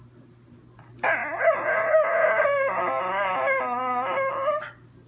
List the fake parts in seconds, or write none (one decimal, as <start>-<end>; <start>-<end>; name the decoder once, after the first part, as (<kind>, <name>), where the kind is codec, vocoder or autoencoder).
none